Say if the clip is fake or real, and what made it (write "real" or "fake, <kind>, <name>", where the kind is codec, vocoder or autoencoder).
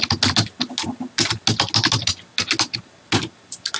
real